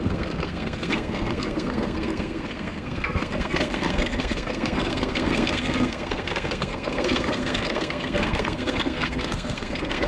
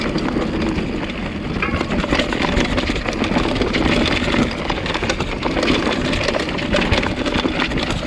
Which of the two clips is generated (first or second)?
first